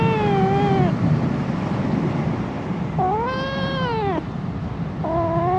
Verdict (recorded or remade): recorded